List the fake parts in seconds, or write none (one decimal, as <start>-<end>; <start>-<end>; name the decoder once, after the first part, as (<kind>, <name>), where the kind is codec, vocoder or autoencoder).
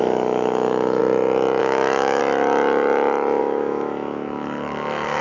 0.0-1.0 (autoencoder, DAC-VAE); 1.6-2.2; 3.4-5.2